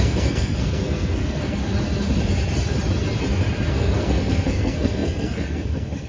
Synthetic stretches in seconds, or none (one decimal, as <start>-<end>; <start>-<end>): 0.0-1.6; 3.7-6.1

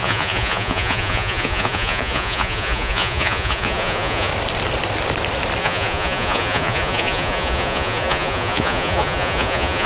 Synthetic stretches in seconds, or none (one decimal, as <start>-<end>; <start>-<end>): 0.0-4.3; 5.6-9.9

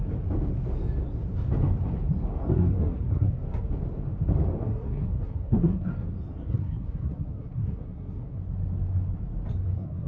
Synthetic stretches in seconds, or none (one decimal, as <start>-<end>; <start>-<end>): 2.5-3.4; 4.6-5.9; 6.5-8.4; 9.7-10.1

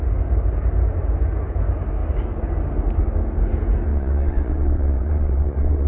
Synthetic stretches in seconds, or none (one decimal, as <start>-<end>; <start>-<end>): 3.9-5.9

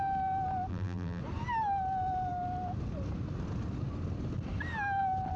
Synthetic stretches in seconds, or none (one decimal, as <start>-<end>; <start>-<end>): 0.7-1.2

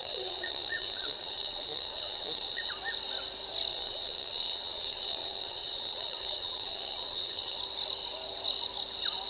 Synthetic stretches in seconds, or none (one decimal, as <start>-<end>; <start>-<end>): 0.0-2.7; 3.7-7.6